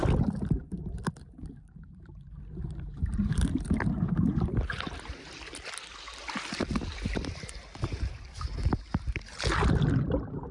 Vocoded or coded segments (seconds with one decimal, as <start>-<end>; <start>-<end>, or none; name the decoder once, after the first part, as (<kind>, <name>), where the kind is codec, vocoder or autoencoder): 0.0-10.5 (vocoder, BigVGAN v2)